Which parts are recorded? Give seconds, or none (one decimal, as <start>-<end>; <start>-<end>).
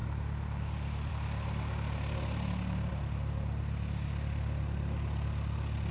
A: 0.0-5.9